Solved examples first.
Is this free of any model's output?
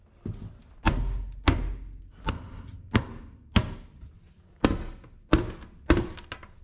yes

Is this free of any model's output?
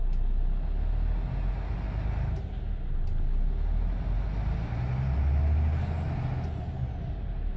yes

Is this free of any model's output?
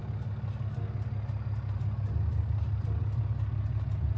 yes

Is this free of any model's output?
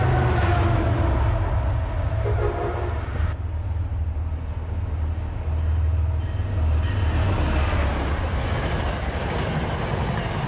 yes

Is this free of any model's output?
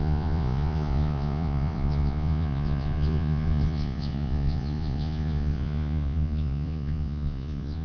no